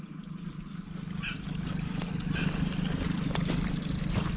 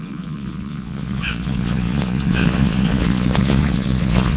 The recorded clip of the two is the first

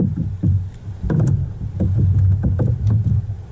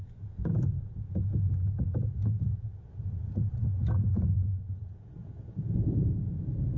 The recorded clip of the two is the first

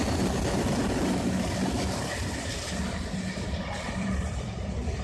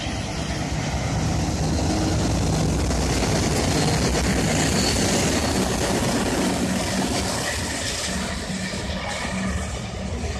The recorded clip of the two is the second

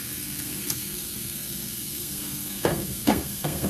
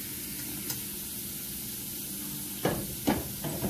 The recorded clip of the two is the second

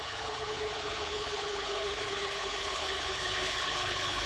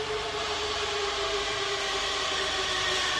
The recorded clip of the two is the second